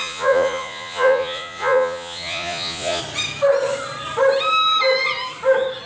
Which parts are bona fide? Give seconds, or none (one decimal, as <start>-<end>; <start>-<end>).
3.0-5.9